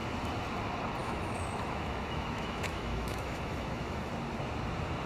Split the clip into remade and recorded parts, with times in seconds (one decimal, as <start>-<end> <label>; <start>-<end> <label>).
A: 0.0-1.0 recorded; 1.0-4.1 remade; 4.1-5.1 recorded